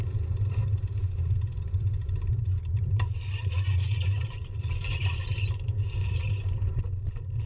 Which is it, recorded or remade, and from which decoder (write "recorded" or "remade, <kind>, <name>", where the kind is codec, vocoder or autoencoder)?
remade, vocoder, BigVGAN v2